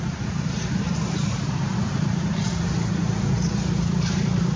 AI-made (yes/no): yes